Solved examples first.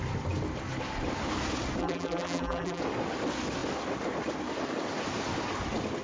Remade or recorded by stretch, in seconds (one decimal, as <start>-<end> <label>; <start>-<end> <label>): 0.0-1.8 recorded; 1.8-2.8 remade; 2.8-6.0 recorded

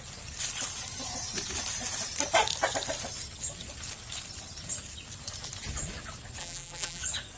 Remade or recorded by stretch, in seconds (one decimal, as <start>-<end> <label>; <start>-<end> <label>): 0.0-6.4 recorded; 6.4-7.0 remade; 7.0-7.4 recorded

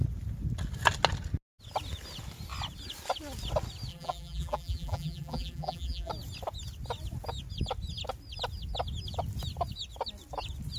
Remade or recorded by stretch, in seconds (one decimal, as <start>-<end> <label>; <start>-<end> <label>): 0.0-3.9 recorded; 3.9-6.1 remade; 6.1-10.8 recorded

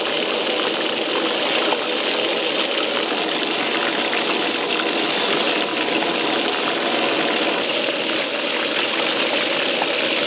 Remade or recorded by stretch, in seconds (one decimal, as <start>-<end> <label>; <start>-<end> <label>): 0.0-10.3 recorded